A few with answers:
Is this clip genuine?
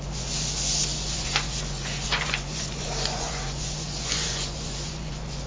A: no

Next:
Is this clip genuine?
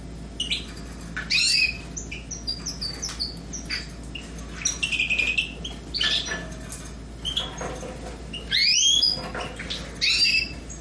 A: yes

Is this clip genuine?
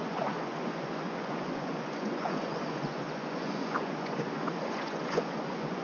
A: no